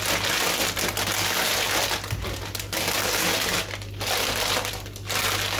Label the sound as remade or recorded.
recorded